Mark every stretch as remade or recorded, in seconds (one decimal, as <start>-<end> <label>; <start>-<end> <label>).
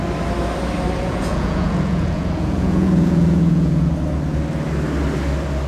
0.0-1.1 recorded; 1.1-3.9 remade; 3.9-5.7 recorded